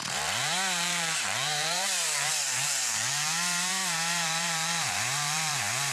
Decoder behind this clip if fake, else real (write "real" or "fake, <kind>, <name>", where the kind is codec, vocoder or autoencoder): fake, vocoder, BigVGAN v2